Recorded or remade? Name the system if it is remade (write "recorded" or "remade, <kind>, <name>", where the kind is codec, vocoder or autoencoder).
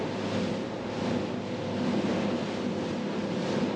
recorded